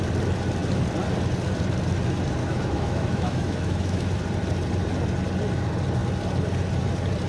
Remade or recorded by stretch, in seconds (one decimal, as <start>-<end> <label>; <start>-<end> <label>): 0.0-2.4 recorded; 2.4-4.2 remade; 4.2-7.3 recorded